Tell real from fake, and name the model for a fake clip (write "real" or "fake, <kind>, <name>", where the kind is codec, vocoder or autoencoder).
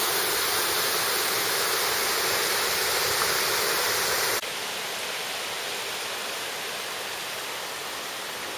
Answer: real